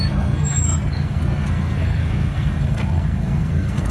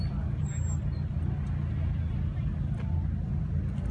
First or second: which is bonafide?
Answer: second